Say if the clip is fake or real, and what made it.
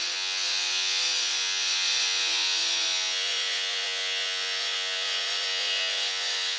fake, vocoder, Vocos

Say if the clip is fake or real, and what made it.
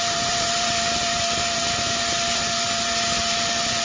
fake, vocoder, BigVGAN v2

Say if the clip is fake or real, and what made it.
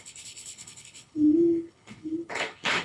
fake, codec, HILCodec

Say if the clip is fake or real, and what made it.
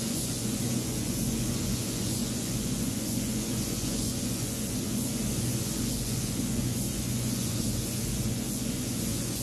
fake, vocoder, Vocos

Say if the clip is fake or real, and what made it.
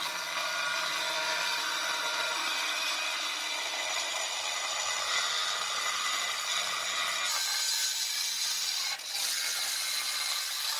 real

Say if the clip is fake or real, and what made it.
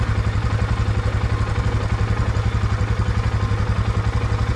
real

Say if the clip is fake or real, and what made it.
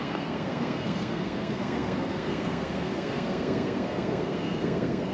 fake, codec, SNAC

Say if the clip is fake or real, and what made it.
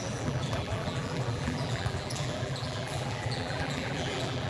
fake, vocoder, BigVGAN v2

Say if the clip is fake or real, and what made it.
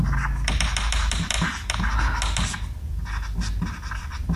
real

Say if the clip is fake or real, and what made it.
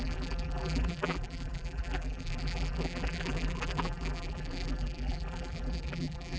fake, vocoder, BigVGAN v2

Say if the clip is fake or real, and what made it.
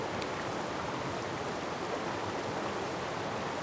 real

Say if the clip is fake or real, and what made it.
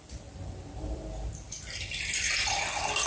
real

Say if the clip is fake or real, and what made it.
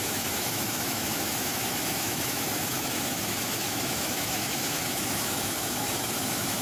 fake, autoencoder, DAC-VAE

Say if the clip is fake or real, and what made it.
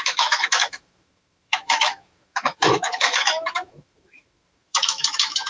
fake, autoencoder, DAC-VAE